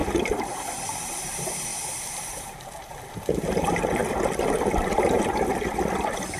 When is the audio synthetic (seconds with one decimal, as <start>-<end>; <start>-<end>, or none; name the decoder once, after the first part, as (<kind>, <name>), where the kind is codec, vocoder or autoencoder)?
0.0-4.0 (vocoder, BigVGAN v2); 4.9-5.5; 6.0-6.4